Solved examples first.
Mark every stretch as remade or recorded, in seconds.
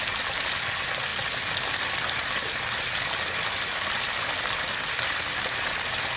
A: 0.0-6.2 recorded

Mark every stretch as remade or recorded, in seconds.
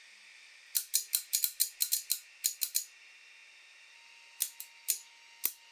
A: 0.0-5.7 recorded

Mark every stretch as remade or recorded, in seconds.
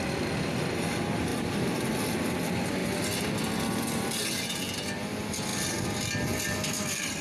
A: 0.0-1.3 recorded; 1.3-1.9 remade; 1.9-7.2 recorded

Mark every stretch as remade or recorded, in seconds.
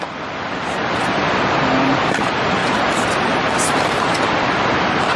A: 0.0-1.2 remade; 1.2-2.2 recorded; 2.2-5.2 remade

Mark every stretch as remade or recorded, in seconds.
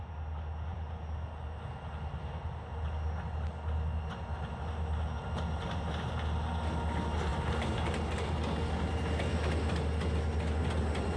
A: 0.0-11.2 recorded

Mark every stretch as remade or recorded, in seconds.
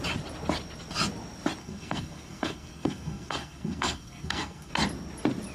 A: 0.0-1.6 recorded; 1.6-4.7 remade; 4.7-5.5 recorded